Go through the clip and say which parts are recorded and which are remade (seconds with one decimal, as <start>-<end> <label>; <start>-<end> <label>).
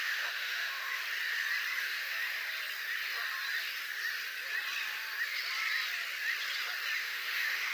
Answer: 0.0-1.0 remade; 1.0-1.8 recorded; 1.8-2.4 remade; 2.4-7.0 recorded; 7.0-7.7 remade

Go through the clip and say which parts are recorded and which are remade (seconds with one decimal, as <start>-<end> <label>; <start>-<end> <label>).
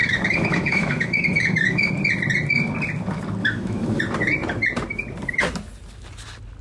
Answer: 0.0-1.9 remade; 1.9-3.4 recorded; 3.4-4.0 remade; 4.0-6.6 recorded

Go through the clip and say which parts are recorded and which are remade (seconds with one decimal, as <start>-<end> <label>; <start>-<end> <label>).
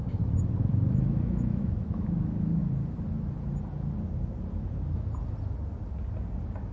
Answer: 0.0-2.6 remade; 2.6-6.7 recorded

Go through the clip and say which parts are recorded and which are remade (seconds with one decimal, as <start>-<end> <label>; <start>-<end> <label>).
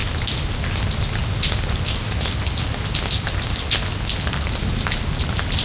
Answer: 0.0-5.6 recorded